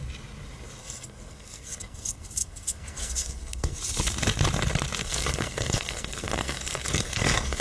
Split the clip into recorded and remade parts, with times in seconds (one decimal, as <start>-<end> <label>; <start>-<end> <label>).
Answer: 0.0-0.8 recorded; 0.8-3.8 remade; 3.8-5.0 recorded; 5.0-7.6 remade